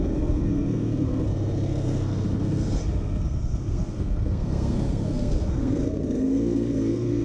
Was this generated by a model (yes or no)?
yes